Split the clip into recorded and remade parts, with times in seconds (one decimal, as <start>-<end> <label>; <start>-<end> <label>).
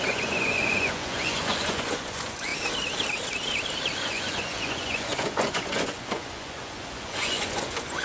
0.0-2.5 remade; 2.5-4.0 recorded; 4.0-8.0 remade